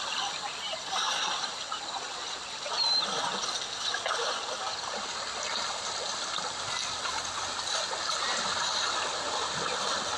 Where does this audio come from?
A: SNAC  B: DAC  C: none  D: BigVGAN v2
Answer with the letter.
C